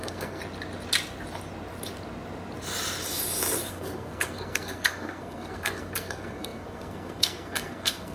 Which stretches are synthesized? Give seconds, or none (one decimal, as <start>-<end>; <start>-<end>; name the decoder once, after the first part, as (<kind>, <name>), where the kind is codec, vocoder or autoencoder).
0.0-0.4 (codec, SNAC); 3.7-8.1